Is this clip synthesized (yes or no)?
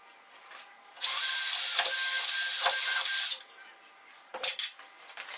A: no